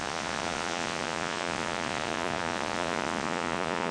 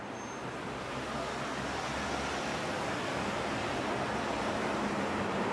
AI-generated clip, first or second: first